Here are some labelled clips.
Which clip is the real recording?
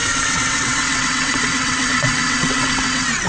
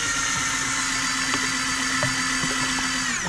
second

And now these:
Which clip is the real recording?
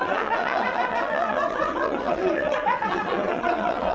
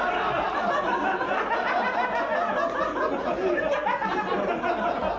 second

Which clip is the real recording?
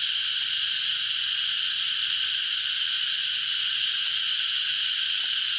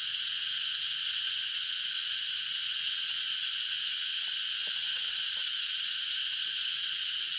first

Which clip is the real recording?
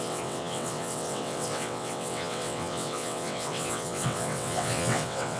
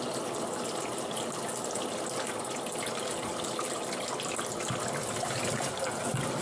second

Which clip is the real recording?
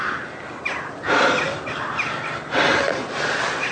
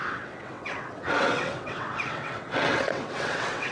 first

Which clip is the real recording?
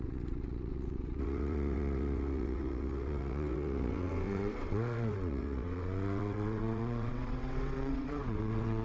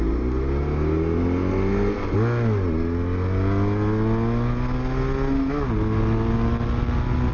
second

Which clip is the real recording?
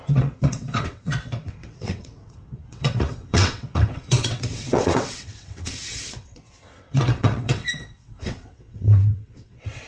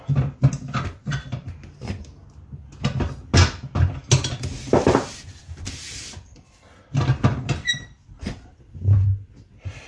second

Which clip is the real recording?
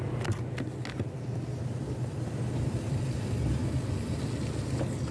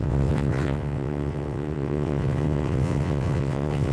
first